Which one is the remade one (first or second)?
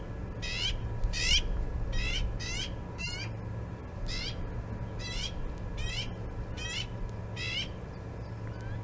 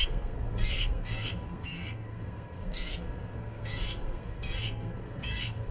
second